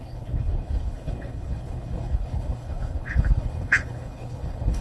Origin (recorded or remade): remade